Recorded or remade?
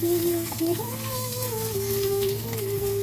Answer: remade